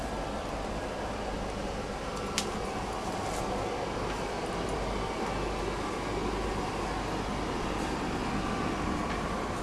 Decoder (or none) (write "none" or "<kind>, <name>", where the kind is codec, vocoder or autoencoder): none